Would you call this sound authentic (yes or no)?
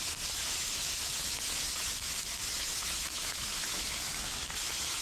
no